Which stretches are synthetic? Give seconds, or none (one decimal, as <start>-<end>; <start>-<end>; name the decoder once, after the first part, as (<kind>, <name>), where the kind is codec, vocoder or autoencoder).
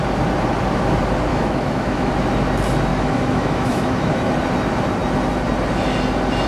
1.3-2.1 (autoencoder, DAC-VAE); 2.9-4.3